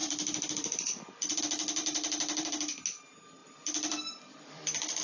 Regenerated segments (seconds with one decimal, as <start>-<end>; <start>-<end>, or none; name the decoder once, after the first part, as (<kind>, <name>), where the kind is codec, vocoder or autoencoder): 0.0-1.4 (vocoder, BigVGAN v2); 1.8-2.5; 3.4-5.0